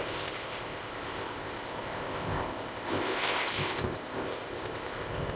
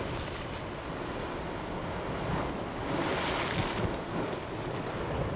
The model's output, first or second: first